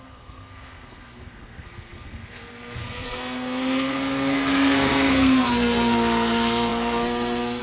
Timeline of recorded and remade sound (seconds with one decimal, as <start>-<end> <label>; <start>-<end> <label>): 0.0-7.6 remade